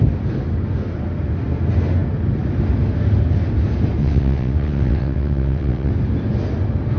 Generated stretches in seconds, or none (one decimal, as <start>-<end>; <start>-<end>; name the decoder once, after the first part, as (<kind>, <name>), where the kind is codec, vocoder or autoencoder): 4.0-5.9 (vocoder, WaveNeXt)